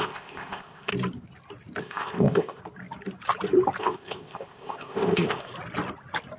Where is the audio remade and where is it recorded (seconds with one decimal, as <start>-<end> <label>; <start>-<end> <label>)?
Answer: 0.0-0.9 remade; 0.9-1.8 recorded; 1.8-2.6 remade; 2.6-3.8 recorded; 3.8-5.5 remade; 5.5-6.4 recorded